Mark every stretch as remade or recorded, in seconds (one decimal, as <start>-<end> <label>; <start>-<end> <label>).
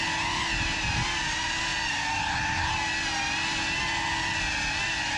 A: 0.0-5.2 recorded